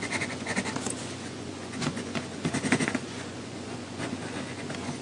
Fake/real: fake